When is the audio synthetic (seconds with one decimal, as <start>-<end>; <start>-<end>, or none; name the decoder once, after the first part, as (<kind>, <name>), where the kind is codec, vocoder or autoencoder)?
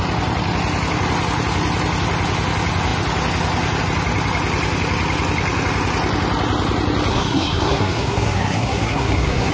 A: 7.1-9.5 (codec, SNAC)